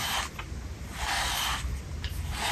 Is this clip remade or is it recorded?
recorded